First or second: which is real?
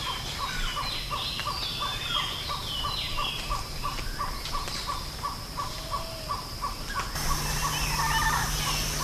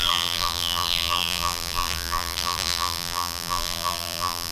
first